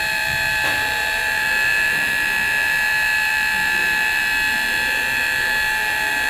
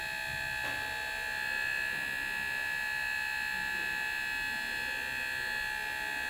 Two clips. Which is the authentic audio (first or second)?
second